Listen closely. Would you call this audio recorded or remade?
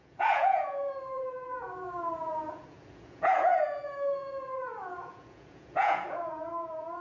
remade